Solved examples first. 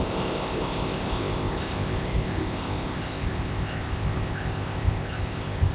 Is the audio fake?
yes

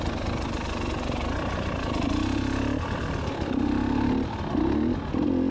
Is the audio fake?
no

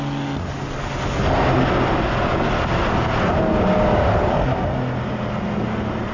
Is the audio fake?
no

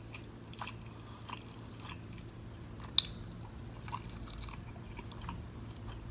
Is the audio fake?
no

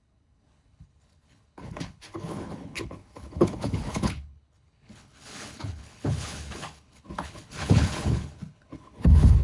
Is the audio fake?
yes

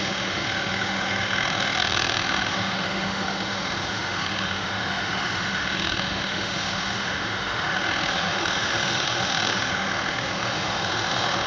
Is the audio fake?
yes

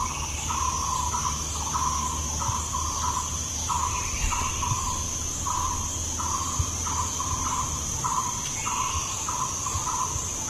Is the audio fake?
no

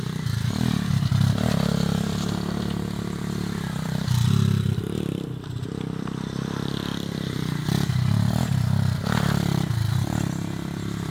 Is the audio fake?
yes